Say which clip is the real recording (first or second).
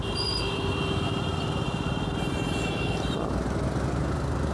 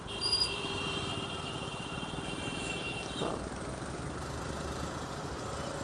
first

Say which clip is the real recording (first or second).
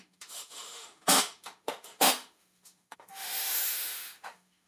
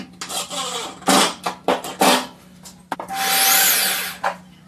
second